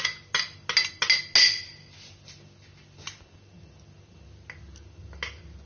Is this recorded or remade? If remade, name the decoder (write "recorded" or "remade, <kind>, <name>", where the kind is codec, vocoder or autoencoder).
recorded